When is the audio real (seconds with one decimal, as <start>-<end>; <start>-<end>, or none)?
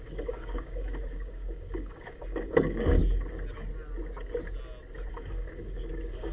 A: 3.0-5.1